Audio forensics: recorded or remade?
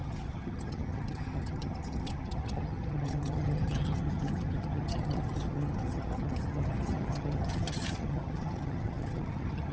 remade